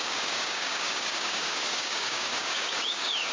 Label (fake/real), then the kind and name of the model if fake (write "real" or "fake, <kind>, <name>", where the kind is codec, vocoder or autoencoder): fake, codec, DAC